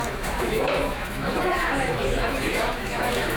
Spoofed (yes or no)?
yes